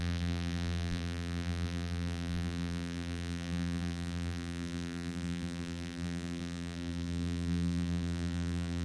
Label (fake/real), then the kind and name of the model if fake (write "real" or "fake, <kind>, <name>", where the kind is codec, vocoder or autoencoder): fake, vocoder, BigVGAN v2